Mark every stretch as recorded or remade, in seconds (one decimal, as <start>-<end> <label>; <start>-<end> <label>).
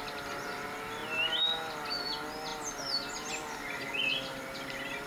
0.0-5.1 recorded